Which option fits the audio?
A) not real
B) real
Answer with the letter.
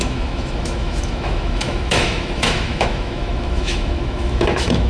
A